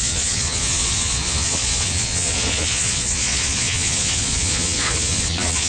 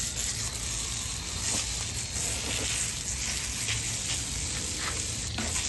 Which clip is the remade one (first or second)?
first